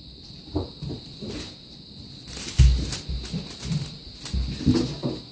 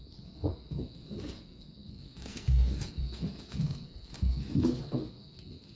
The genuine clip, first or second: first